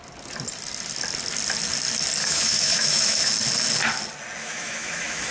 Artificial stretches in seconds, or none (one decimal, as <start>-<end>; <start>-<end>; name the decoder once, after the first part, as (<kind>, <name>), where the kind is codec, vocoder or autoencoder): 2.2-3.3 (autoencoder, DAC-VAE); 4.4-5.3